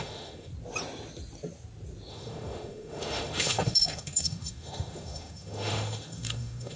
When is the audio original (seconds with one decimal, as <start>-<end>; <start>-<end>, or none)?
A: 0.5-2.1